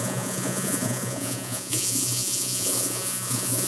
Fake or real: fake